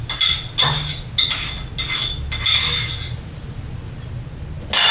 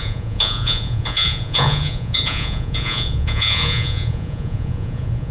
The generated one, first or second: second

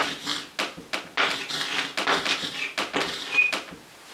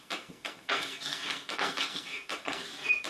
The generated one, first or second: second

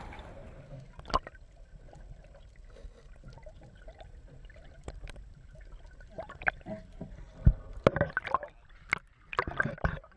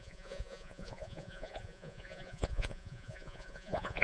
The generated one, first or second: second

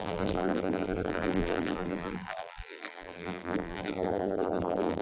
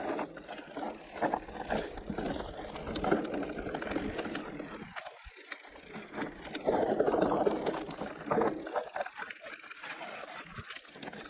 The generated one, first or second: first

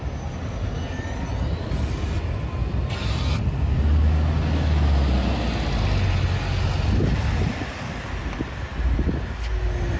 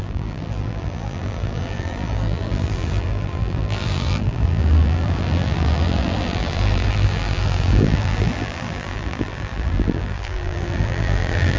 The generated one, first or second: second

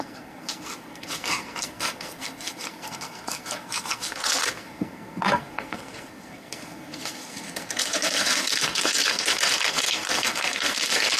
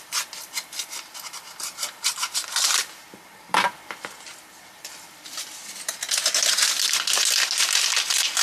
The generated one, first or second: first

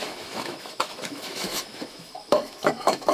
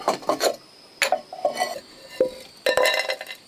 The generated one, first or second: first